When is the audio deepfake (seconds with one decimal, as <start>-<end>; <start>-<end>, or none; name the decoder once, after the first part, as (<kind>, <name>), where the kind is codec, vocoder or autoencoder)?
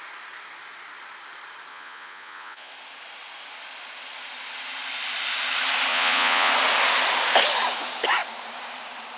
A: 1.7-2.7 (vocoder, Vocos); 5.9-6.5